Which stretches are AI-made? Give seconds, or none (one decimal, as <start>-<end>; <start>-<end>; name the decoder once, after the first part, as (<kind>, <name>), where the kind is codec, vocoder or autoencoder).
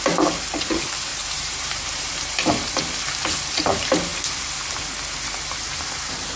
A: 1.1-2.7 (vocoder, BigVGAN v2)